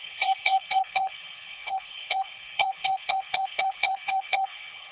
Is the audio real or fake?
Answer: fake